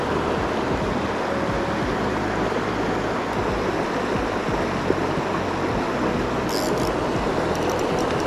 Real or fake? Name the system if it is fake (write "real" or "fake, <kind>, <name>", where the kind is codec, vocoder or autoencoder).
real